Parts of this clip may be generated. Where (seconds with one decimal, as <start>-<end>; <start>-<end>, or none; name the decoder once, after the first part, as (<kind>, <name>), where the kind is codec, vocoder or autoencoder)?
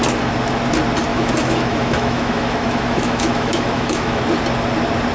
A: 1.1-4.2 (autoencoder, DAC-VAE)